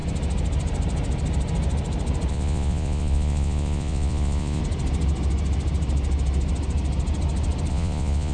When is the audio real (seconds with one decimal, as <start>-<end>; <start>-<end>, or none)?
0.0-2.3; 4.6-7.7